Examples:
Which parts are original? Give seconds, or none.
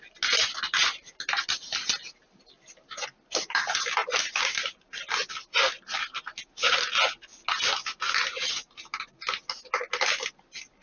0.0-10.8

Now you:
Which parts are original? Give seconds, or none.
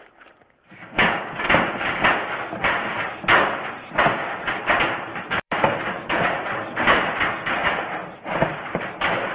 7.6-8.5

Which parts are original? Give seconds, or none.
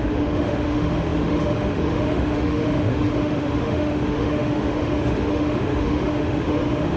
none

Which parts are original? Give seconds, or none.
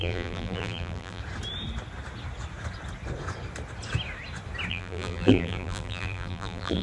1.2-4.7